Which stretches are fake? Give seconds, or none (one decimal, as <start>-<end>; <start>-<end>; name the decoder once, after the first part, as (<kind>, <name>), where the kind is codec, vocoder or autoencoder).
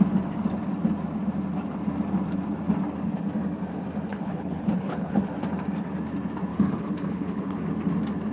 4.1-5.2 (codec, HILCodec); 6.5-7.6